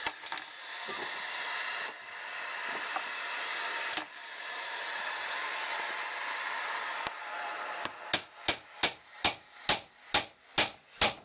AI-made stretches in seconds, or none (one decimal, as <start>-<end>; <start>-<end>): none